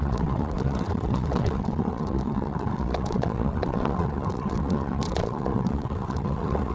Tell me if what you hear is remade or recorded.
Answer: remade